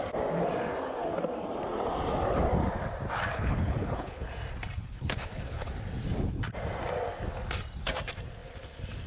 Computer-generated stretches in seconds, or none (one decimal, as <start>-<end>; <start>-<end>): 3.3-4.3; 4.8-5.7